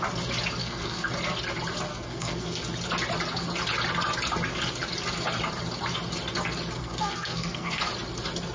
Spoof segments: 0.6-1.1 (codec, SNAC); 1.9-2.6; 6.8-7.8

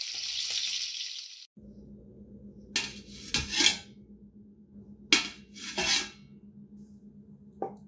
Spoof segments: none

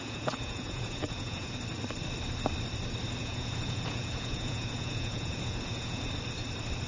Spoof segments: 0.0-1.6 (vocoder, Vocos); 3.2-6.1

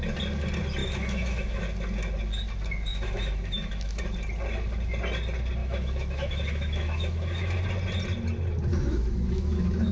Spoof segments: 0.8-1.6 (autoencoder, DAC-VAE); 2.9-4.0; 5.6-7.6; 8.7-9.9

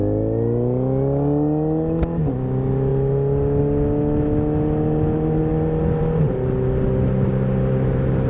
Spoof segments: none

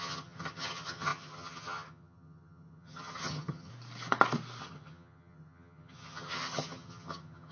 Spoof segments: 0.0-3.7 (vocoder, HiFi-GAN); 4.6-7.5